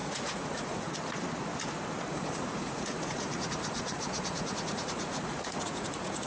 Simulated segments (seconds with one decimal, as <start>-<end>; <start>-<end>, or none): 0.0-0.9; 2.1-6.3